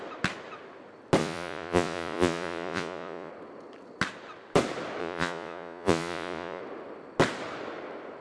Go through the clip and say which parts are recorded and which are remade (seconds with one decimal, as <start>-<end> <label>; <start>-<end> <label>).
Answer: 0.0-1.2 recorded; 1.2-3.3 remade; 3.3-5.0 recorded; 5.0-6.6 remade; 6.6-8.2 recorded